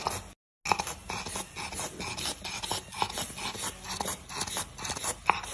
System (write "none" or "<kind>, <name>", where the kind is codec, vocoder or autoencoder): none